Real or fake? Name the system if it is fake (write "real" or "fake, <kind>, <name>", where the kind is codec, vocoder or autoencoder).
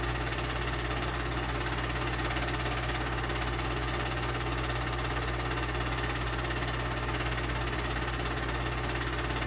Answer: real